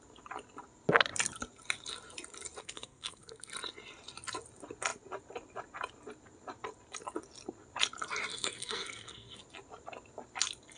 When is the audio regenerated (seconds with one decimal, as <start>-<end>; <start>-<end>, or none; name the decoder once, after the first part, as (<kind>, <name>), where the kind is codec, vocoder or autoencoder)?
2.6-3.5 (codec, SNAC); 8.3-9.4